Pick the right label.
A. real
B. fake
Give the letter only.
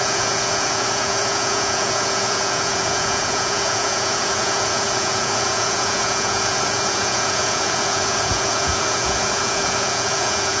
B